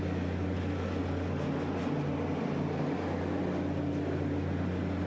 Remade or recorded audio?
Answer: recorded